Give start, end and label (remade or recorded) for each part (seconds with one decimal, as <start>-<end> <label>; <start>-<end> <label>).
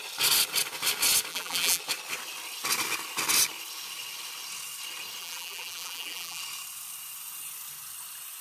0.0-1.3 recorded; 1.3-1.8 remade; 1.8-5.2 recorded; 5.2-6.4 remade; 6.4-8.4 recorded